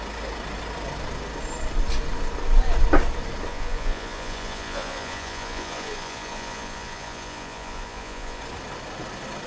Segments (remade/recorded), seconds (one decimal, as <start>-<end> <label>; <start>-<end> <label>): 0.0-3.5 recorded; 3.5-8.4 remade; 8.4-9.5 recorded